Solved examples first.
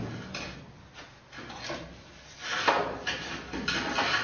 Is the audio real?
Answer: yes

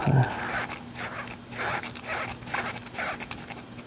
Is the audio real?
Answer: yes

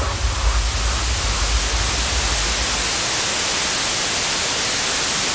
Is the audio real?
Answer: yes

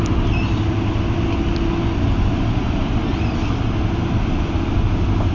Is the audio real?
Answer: yes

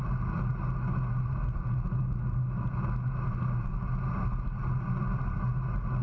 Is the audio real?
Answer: yes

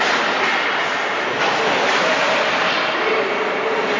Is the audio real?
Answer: yes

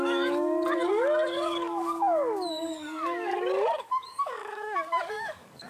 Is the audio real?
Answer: no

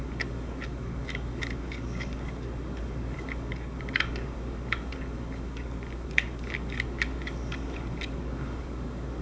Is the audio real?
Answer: no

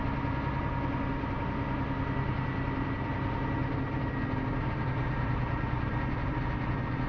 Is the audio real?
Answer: yes